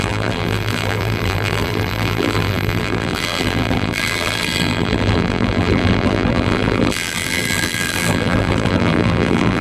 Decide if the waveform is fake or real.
fake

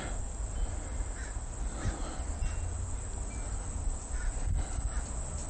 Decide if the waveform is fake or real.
real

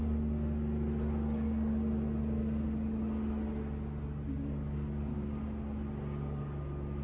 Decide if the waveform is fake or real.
real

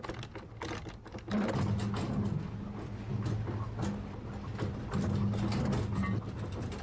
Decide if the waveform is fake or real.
real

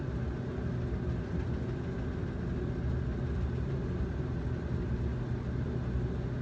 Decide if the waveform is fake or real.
real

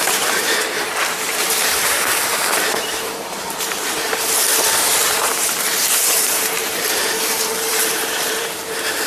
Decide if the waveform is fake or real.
fake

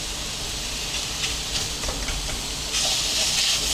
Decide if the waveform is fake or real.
real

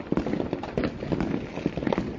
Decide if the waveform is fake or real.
real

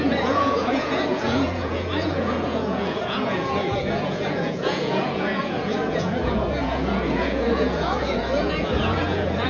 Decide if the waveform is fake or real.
fake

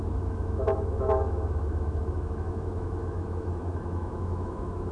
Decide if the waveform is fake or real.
fake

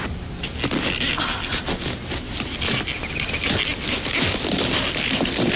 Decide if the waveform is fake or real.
real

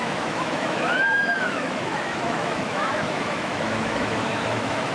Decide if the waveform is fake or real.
fake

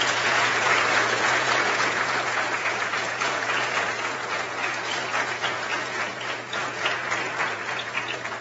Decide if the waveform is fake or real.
fake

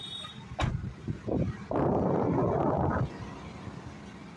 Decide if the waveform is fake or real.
real